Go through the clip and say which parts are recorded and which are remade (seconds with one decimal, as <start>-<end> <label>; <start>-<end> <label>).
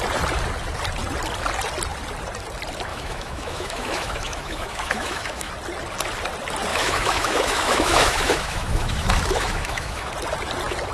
0.0-2.9 recorded; 2.9-5.5 remade; 5.5-6.7 recorded; 6.7-10.1 remade; 10.1-10.9 recorded